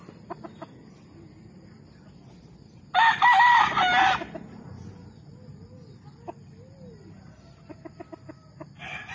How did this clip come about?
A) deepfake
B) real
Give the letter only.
B